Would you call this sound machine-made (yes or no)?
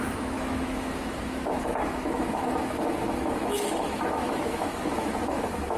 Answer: yes